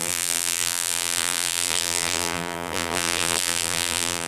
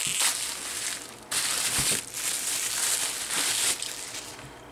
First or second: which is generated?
first